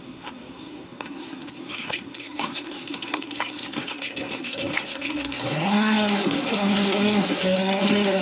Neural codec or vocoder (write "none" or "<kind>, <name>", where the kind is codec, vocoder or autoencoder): codec, SNAC